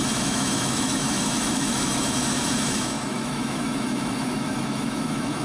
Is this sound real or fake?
fake